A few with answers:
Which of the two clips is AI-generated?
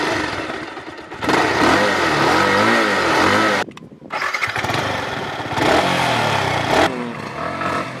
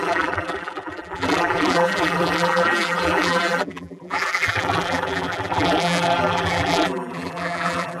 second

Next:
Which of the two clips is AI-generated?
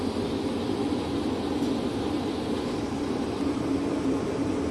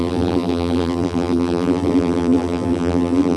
second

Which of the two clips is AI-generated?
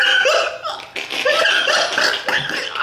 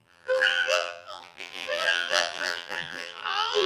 second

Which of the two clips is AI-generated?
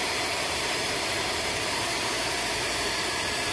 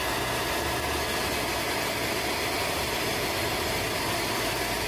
first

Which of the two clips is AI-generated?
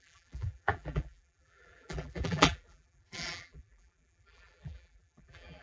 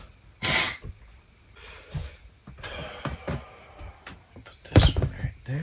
first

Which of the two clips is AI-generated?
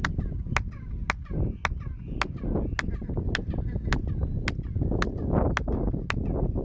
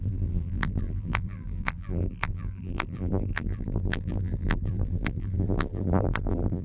second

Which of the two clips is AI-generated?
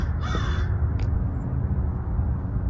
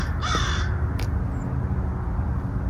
first